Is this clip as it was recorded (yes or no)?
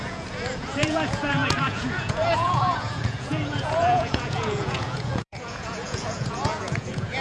no